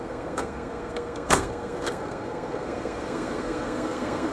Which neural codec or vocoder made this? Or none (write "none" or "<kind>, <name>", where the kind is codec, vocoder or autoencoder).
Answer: codec, SNAC